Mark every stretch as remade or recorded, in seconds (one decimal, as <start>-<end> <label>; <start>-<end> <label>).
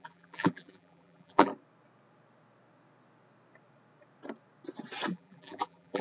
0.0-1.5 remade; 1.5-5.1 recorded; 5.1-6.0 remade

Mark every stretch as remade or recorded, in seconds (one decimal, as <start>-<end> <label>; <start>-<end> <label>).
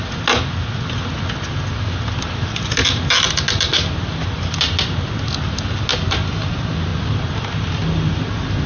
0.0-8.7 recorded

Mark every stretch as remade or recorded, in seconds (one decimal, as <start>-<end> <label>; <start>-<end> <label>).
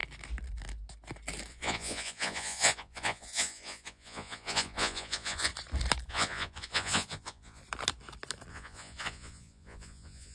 0.0-1.5 recorded; 1.5-5.5 remade; 5.5-6.1 recorded; 6.1-7.6 remade; 7.6-8.5 recorded; 8.5-10.3 remade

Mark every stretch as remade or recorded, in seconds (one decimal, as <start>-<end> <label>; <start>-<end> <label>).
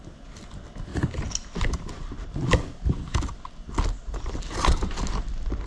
0.0-0.9 remade; 0.9-4.3 recorded; 4.3-5.7 remade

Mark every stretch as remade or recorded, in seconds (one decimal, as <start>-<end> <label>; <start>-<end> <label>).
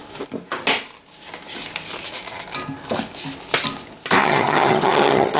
0.0-4.2 recorded; 4.2-5.4 remade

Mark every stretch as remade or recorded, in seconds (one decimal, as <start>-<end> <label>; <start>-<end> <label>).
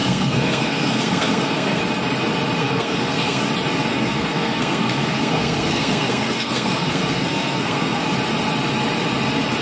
0.0-1.8 remade; 1.8-2.6 recorded; 2.6-3.4 remade; 3.4-3.9 recorded; 3.9-8.0 remade; 8.0-9.6 recorded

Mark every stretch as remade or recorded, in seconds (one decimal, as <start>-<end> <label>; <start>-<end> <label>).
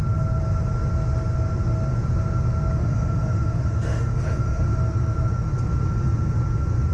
0.0-2.8 recorded; 2.8-4.7 remade; 4.7-6.9 recorded